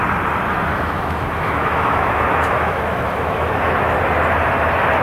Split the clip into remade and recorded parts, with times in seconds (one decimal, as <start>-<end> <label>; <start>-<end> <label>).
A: 0.0-0.7 recorded; 0.7-3.7 remade; 3.7-5.0 recorded